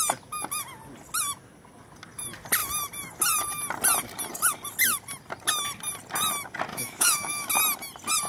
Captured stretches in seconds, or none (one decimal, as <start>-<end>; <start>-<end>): 0.0-6.7; 7.5-8.3